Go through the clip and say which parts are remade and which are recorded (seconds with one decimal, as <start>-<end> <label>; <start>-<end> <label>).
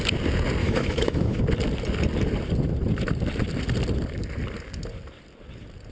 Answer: 0.0-0.6 recorded; 0.6-1.4 remade; 1.4-5.9 recorded